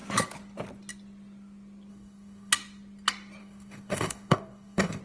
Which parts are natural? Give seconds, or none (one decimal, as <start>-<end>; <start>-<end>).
0.0-1.9; 2.5-3.4